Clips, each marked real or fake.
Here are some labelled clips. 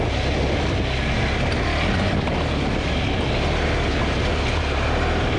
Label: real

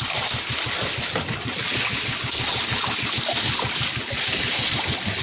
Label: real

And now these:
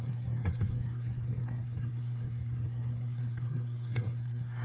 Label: fake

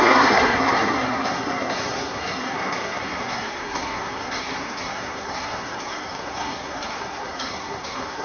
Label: fake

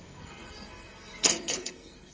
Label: fake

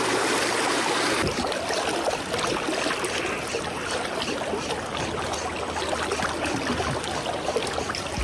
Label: real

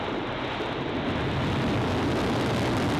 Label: real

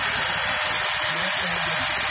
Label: real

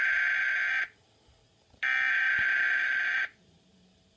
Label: real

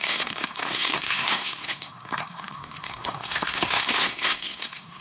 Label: fake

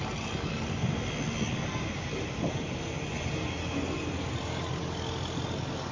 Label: real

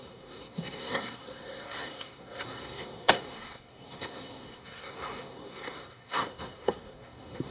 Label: fake